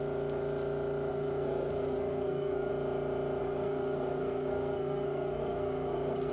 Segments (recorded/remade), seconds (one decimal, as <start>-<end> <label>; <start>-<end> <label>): 0.0-1.1 recorded; 1.1-2.7 remade; 2.7-3.4 recorded; 3.4-6.3 remade